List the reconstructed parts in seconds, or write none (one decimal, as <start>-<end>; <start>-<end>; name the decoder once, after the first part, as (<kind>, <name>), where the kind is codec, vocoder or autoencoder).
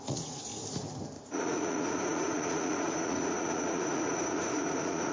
0.0-0.5 (vocoder, Vocos); 1.2-5.1